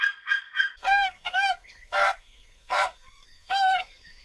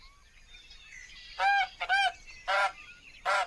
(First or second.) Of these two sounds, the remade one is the first